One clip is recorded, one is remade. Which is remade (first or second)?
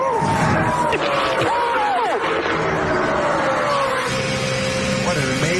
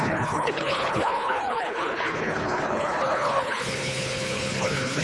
second